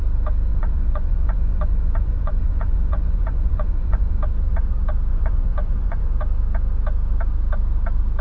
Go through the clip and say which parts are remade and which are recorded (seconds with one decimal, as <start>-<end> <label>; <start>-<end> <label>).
0.0-0.5 recorded; 0.5-4.1 remade; 4.1-5.1 recorded; 5.1-6.1 remade; 6.1-8.2 recorded